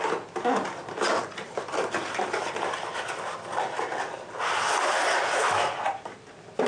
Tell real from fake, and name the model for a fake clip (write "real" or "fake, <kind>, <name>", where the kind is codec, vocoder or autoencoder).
real